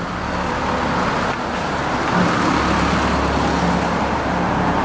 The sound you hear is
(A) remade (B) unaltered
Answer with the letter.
B